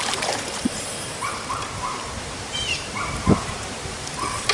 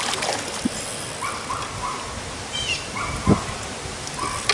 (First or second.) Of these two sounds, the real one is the second